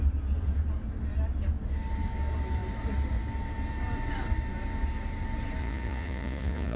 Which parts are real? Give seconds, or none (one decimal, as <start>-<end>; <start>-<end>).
0.0-5.6